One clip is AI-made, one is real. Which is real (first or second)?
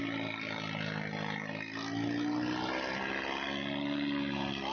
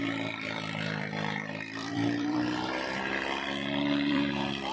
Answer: first